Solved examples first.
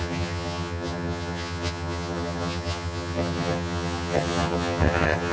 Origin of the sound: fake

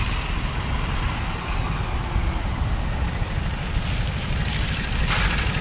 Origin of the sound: real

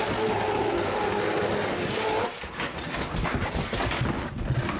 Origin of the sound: real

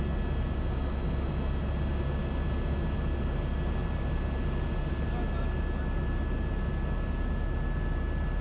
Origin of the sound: real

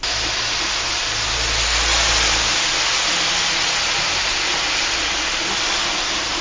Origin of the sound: real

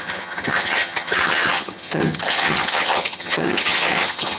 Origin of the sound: fake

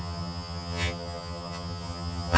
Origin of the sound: fake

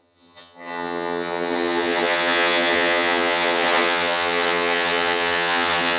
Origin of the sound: fake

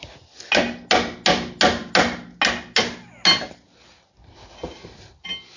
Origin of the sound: real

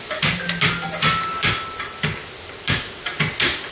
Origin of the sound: real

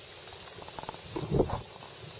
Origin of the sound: real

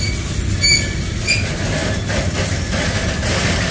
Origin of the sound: real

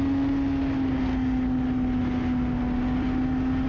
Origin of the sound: real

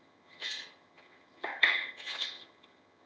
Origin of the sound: fake